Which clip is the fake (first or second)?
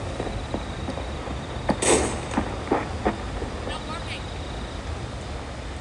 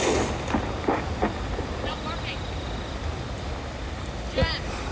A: second